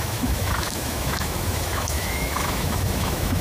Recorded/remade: remade